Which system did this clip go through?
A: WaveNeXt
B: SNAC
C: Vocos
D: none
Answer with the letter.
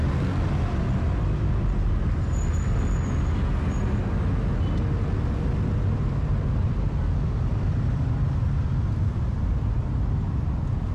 D